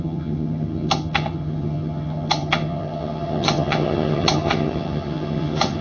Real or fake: fake